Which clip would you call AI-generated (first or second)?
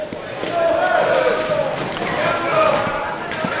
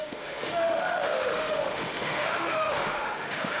second